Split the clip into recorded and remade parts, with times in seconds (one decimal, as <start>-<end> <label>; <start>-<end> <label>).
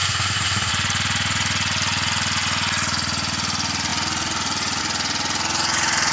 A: 0.0-0.7 remade; 0.7-6.1 recorded